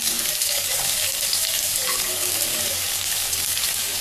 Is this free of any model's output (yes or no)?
no